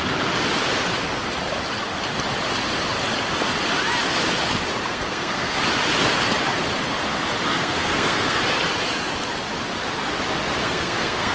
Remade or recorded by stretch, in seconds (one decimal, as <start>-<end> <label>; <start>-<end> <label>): 0.0-4.9 recorded; 4.9-5.6 remade; 5.6-7.5 recorded; 7.5-8.4 remade; 8.4-10.6 recorded; 10.6-11.3 remade